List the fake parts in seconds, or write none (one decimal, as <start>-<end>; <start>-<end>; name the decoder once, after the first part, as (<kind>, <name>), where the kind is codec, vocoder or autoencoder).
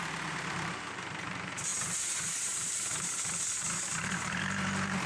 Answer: 0.0-5.1 (vocoder, BigVGAN v2)